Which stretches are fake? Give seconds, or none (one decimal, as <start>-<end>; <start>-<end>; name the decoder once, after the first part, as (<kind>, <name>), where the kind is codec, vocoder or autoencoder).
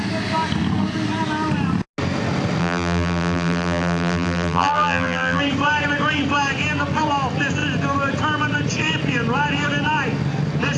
2.6-5.4 (vocoder, BigVGAN v2)